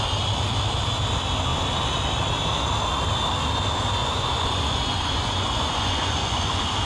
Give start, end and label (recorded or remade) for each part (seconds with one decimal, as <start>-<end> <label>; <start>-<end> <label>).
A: 0.0-4.0 recorded; 4.0-6.8 remade